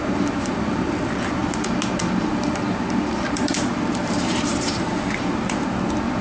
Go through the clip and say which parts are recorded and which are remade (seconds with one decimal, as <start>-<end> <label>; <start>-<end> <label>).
0.0-1.4 remade; 1.4-2.2 recorded; 2.2-6.2 remade